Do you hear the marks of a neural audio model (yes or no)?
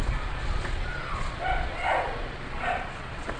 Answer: yes